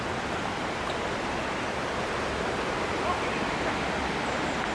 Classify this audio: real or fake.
real